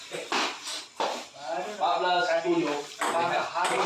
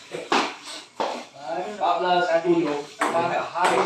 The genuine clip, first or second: first